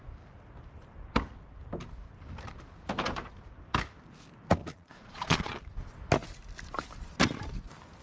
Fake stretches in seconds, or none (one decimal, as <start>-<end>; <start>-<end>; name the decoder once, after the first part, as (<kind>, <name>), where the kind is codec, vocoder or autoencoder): 4.6-5.6 (vocoder, Vocos)

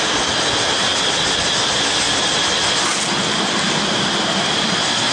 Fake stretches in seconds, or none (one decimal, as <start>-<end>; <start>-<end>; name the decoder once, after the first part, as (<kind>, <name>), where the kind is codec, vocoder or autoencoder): none

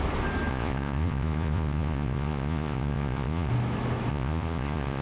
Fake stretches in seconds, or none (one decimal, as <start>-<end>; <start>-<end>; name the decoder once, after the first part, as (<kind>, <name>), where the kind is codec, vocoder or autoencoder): 0.5-3.5 (vocoder, Vocos); 4.1-5.0

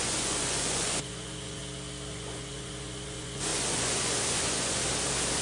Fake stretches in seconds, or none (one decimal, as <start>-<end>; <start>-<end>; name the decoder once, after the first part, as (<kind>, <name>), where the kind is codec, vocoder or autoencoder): 0.0-1.6 (vocoder, Vocos); 2.1-4.8

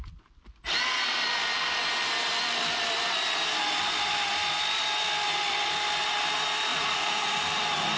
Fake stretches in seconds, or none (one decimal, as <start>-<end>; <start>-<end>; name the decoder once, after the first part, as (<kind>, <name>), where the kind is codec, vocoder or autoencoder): 6.7-7.4 (vocoder, Vocos)

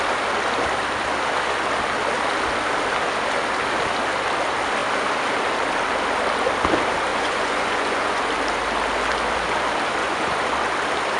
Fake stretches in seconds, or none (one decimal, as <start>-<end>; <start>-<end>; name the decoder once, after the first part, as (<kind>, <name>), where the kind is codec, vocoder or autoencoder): 7.1-8.2 (vocoder, Vocos); 10.0-10.5

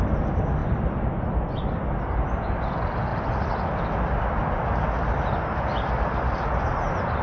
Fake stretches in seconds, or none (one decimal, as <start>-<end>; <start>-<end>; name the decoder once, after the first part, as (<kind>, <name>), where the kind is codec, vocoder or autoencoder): none

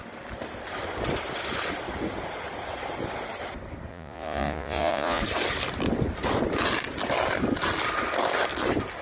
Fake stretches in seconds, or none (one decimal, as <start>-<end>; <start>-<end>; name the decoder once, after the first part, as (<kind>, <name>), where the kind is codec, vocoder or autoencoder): 3.9-5.2 (vocoder, Vocos)